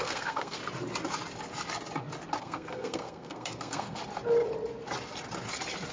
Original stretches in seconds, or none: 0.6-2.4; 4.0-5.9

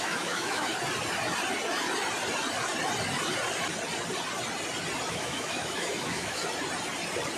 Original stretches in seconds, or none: 0.7-5.1; 6.4-7.4

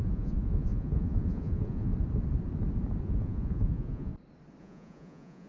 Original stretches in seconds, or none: 1.9-3.0; 4.1-4.6

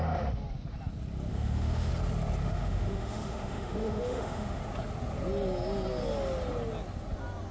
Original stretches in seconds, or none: 0.0-1.3; 1.9-2.4; 4.6-7.5

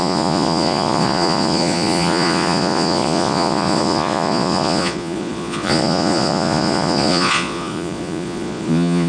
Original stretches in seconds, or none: none